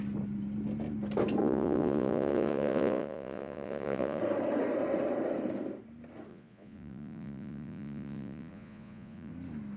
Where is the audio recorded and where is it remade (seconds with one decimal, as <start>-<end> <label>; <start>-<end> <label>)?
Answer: 0.0-1.4 recorded; 1.4-4.2 remade; 4.2-6.3 recorded; 6.3-9.3 remade; 9.3-9.8 recorded